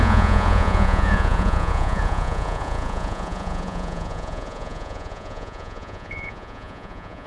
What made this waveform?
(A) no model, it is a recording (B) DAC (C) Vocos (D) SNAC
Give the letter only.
C